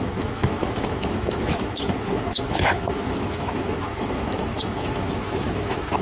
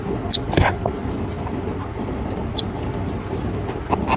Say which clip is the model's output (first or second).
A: first